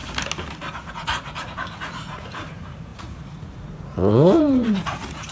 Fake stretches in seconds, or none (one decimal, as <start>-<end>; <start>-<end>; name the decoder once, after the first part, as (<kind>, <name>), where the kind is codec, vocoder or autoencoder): 0.9-5.3 (vocoder, Vocos)